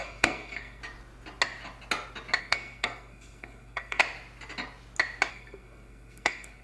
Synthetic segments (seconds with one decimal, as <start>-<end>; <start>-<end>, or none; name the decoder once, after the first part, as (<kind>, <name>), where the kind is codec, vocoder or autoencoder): 0.0-0.8 (codec, SNAC); 2.4-4.0; 5.3-6.6

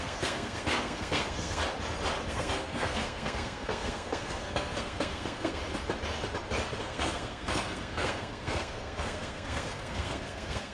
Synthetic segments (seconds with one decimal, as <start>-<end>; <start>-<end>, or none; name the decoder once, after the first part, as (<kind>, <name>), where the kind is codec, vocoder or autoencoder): 0.0-1.6 (codec, SNAC); 2.3-5.6; 6.8-10.7